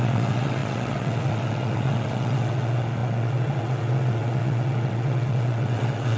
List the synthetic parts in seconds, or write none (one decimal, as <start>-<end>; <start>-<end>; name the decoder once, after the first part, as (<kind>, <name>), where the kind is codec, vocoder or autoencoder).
0.0-6.2 (vocoder, WaveNeXt)